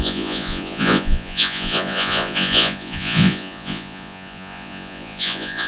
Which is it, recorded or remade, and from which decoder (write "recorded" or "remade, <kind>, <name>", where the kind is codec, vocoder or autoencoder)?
remade, vocoder, Vocos